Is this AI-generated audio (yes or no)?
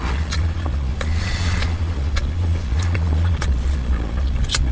yes